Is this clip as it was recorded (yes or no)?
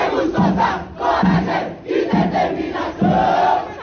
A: yes